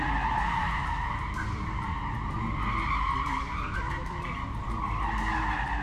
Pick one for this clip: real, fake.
real